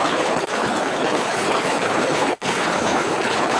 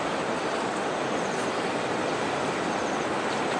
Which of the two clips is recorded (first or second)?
second